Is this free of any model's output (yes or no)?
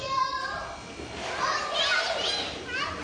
yes